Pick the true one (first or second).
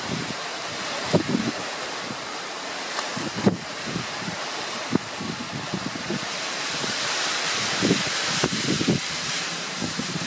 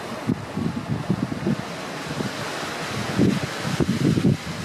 second